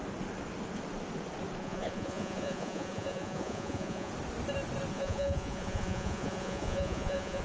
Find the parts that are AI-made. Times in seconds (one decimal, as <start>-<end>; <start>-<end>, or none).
1.6-4.1; 4.9-7.4